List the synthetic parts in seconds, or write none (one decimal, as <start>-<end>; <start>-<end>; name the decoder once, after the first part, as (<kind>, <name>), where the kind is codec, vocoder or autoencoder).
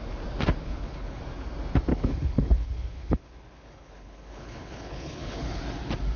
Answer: 0.6-1.2 (codec, HILCodec); 1.9-5.6